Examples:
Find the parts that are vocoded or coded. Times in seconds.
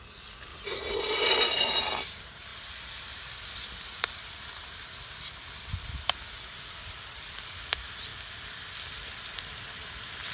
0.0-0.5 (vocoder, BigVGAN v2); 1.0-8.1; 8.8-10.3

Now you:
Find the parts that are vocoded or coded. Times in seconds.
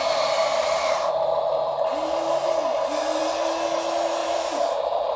0.5-1.1 (vocoder, BigVGAN v2); 4.2-5.2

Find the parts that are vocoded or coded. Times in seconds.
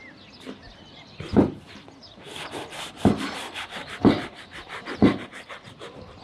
2.0-5.7 (vocoder, BigVGAN v2)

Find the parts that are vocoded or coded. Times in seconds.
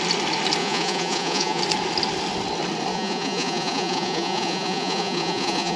0.6-1.6 (vocoder, Vocos); 2.9-5.8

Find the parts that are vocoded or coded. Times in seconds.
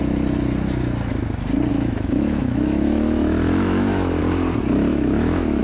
1.7-4.2 (autoencoder, DAC-VAE); 4.9-5.6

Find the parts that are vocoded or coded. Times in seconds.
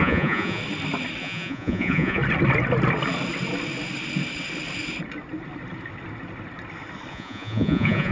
0.0-0.6 (vocoder, Vocos); 1.2-2.2; 7.1-8.1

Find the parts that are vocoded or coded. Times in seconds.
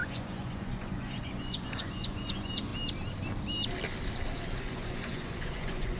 0.0-2.7 (vocoder, Vocos); 4.6-6.0